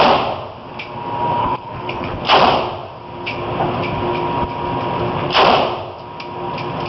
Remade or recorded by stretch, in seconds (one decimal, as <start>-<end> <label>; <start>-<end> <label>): 0.0-1.4 recorded; 1.4-2.2 remade; 2.2-6.9 recorded